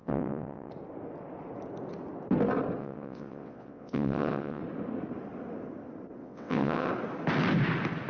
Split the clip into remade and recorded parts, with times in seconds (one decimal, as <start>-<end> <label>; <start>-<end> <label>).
0.0-0.7 remade; 0.7-2.8 recorded; 2.8-4.6 remade; 4.6-6.2 recorded; 6.2-6.9 remade; 6.9-8.1 recorded